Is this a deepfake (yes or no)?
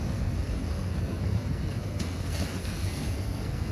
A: yes